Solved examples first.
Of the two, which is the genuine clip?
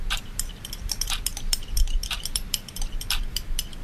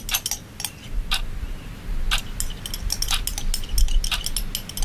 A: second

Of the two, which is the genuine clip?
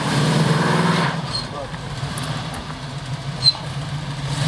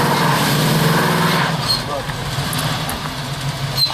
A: second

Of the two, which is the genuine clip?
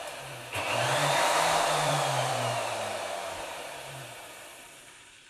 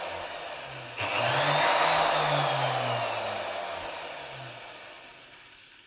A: second